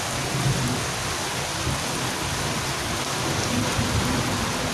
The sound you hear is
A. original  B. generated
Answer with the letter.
A